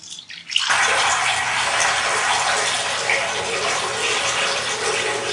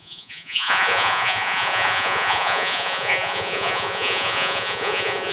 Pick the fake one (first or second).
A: second